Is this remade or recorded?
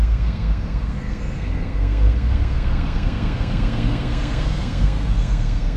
remade